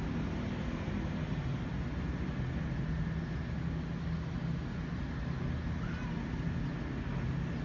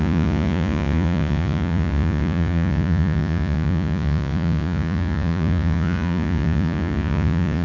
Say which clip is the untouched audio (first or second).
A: first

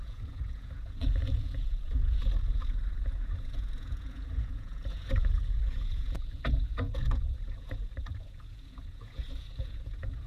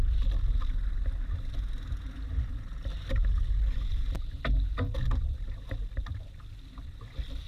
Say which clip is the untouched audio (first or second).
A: second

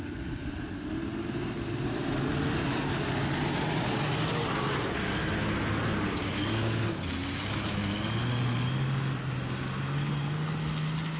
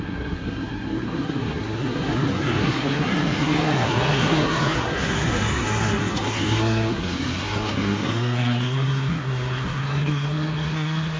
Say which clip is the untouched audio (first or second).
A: first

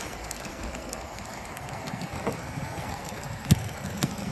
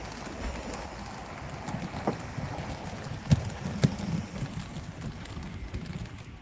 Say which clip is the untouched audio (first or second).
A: second